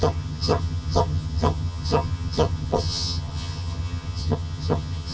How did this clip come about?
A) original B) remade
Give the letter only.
B